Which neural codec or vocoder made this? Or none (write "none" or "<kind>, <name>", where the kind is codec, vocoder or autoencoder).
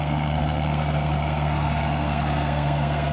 codec, SNAC